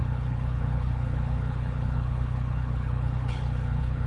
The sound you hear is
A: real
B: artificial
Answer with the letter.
B